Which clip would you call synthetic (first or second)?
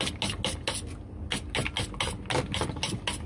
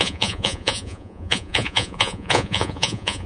second